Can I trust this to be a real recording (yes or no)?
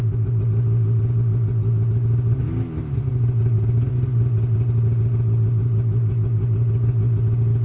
yes